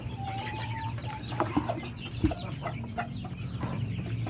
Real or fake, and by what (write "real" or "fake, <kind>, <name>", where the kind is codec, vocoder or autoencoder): fake, vocoder, BigVGAN v2